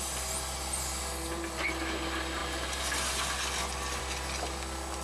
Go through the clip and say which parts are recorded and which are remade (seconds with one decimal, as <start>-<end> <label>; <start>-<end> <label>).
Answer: 0.0-5.0 recorded